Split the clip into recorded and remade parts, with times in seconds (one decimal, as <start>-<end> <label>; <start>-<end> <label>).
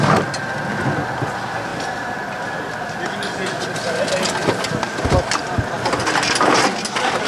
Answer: 0.0-7.3 recorded